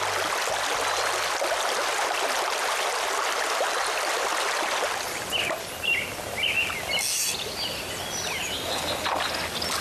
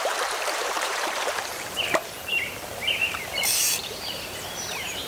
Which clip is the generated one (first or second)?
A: second